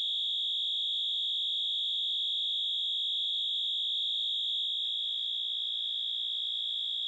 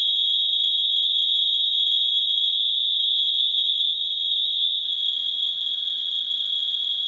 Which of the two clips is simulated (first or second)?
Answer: second